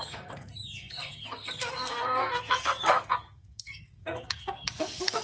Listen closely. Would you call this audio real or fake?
fake